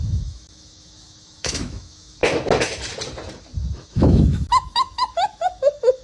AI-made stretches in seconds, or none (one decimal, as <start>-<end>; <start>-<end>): 0.0-2.2; 3.8-6.0